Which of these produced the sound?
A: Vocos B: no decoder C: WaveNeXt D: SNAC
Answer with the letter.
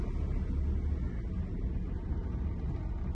B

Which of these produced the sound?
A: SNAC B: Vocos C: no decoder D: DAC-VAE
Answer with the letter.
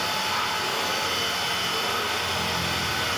C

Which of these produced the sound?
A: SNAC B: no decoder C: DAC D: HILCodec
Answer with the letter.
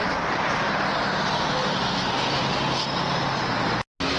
B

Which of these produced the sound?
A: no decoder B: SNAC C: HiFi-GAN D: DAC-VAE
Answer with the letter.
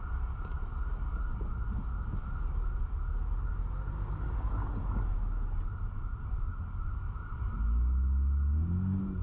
A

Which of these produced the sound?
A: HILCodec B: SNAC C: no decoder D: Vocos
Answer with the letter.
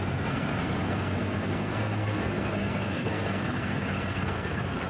B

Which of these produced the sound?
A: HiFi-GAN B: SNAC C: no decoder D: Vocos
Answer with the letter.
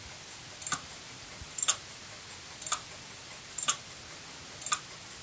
C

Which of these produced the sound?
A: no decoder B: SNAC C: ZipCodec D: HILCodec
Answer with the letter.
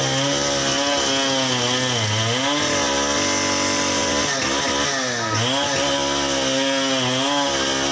A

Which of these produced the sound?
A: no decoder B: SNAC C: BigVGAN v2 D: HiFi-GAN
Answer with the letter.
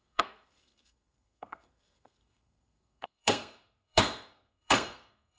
B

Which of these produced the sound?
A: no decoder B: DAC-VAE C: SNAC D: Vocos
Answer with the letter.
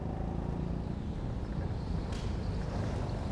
A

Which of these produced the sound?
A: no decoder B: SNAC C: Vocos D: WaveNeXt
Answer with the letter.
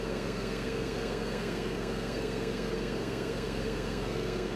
B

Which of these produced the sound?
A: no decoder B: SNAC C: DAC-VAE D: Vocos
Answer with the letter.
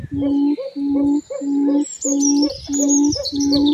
A